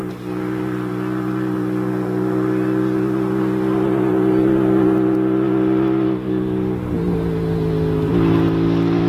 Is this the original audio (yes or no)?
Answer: yes